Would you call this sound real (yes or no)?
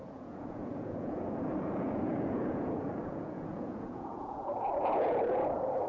no